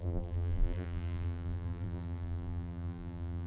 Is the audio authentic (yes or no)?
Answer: no